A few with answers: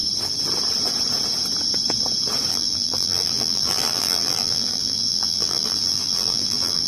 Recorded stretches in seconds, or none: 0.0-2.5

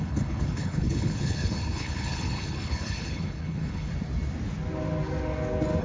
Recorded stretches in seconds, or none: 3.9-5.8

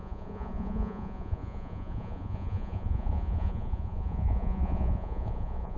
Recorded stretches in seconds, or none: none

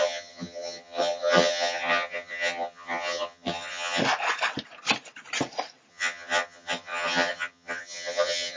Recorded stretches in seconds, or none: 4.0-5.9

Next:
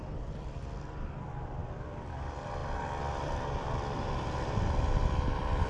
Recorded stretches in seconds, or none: none